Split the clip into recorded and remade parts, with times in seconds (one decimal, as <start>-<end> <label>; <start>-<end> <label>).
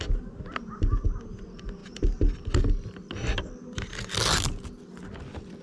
0.0-5.6 recorded